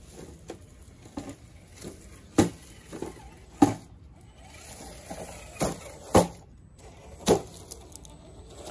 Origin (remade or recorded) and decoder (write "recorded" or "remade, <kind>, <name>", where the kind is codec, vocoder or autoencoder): recorded